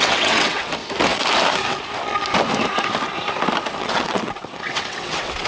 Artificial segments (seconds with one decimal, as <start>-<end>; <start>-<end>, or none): 0.0-0.8; 3.8-5.5